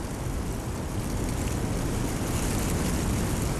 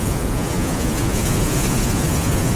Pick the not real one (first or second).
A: second